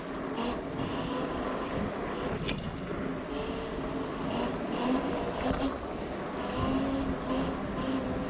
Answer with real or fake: real